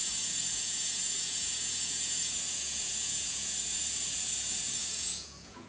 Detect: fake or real fake